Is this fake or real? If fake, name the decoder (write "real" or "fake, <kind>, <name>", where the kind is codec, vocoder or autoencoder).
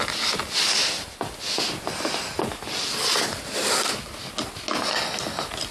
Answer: real